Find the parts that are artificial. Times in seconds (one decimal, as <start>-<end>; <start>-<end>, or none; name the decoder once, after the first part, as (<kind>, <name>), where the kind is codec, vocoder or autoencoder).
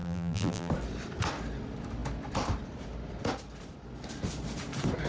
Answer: 0.0-0.7 (vocoder, BigVGAN v2)